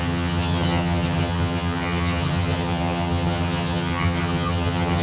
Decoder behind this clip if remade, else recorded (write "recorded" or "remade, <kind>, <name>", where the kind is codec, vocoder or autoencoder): remade, vocoder, HiFi-GAN